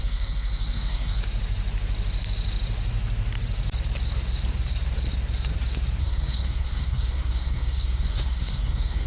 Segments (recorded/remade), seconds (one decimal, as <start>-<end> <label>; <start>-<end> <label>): 0.0-1.2 remade; 1.2-6.0 recorded; 6.0-9.1 remade